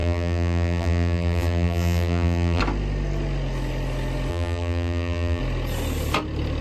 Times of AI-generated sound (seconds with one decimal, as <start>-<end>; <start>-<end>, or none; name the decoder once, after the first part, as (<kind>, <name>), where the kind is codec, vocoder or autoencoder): 0.0-2.6 (vocoder, BigVGAN v2); 4.3-5.4